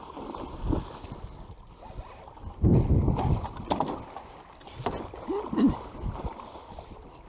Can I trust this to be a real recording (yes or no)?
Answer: yes